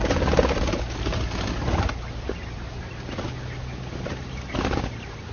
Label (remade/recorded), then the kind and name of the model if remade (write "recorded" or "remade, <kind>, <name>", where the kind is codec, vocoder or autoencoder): recorded